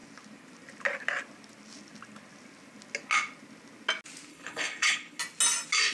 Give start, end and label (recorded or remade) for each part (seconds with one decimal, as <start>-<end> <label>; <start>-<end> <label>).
0.0-4.3 recorded; 4.3-5.2 remade; 5.2-5.9 recorded